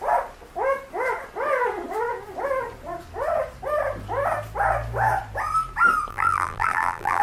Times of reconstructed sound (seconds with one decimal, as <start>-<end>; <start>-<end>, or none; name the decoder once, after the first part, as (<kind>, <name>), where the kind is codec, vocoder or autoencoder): 6.1-7.2 (vocoder, BigVGAN v2)